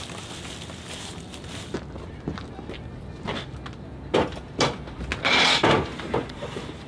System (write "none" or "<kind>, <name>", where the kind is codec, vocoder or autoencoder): none